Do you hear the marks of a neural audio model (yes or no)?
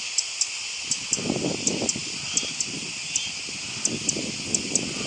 no